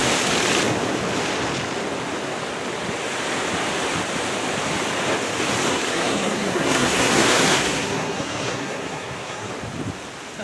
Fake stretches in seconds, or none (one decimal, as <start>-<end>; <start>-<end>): 5.7-9.5